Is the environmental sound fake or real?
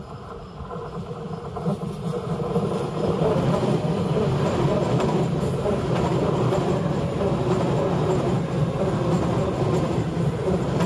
real